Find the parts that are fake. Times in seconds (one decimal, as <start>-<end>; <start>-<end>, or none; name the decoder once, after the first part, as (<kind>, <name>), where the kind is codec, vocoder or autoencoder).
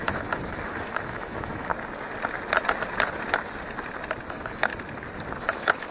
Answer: 0.0-1.7 (autoencoder, DAC-VAE); 4.3-4.7; 5.4-5.9